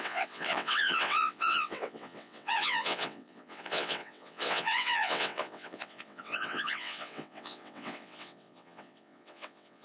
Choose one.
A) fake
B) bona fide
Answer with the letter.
A